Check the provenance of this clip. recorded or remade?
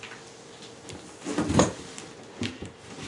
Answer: recorded